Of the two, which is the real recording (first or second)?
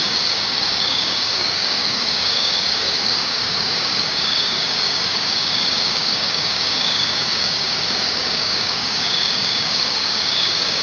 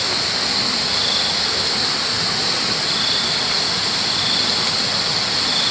second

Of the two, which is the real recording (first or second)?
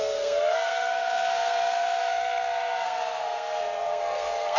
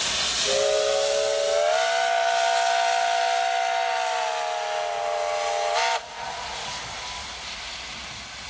second